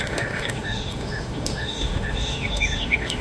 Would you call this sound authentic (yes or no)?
no